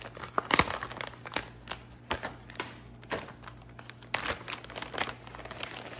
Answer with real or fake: real